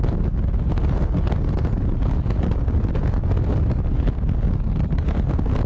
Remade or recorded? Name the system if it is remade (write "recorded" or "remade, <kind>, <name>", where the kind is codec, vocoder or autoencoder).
recorded